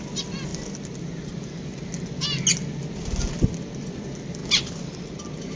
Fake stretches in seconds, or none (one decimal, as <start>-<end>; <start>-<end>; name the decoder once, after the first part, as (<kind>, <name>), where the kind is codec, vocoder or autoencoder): none